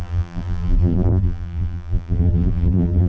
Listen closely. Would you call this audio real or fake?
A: fake